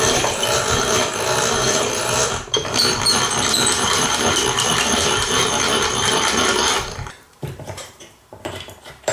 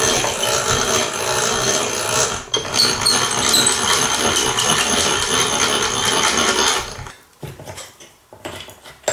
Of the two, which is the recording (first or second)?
second